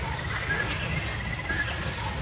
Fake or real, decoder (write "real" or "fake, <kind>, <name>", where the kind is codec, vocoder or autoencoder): real